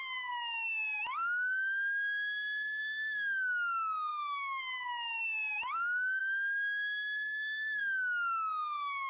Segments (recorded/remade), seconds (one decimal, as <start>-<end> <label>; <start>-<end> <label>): 0.0-4.1 recorded; 4.1-4.6 remade; 4.6-6.2 recorded; 6.2-7.8 remade; 7.8-9.1 recorded